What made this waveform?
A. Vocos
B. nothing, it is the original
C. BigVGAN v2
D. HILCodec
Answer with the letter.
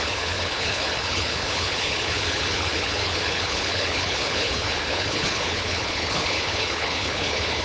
D